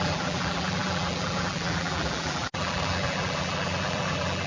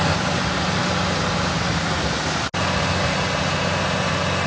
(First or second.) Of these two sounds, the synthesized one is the first